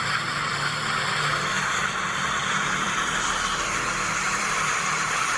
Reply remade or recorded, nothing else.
remade